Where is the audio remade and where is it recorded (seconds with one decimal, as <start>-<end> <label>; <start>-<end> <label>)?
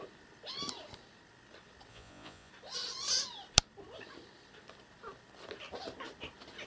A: 0.0-1.9 recorded; 1.9-2.5 remade; 2.5-6.7 recorded